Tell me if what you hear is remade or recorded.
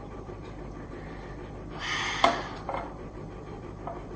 remade